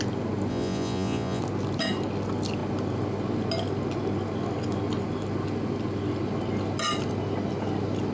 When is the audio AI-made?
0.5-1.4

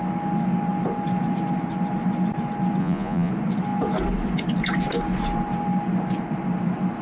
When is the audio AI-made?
2.8-3.3

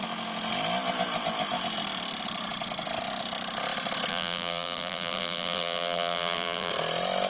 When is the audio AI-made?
4.1-6.7

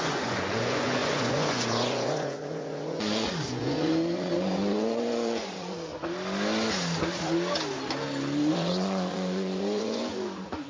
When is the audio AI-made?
0.0-5.9; 8.5-10.7

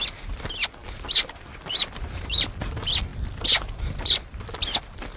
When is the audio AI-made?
0.0-5.2

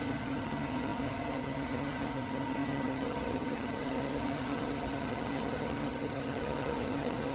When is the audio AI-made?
0.0-7.3

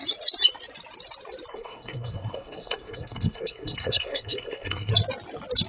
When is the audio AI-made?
1.5-4.9

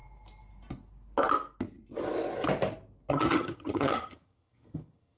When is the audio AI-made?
3.1-5.2